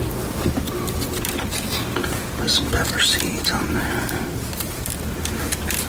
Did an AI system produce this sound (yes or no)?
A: no